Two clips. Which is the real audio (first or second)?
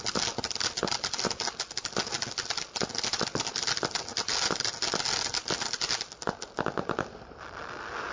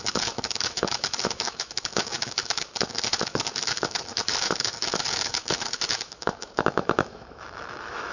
first